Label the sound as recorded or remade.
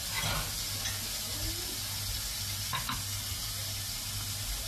recorded